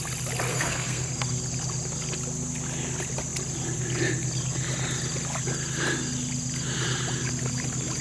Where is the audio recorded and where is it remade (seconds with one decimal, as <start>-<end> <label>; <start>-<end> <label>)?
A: 0.0-0.5 recorded; 0.5-1.1 remade; 1.1-8.0 recorded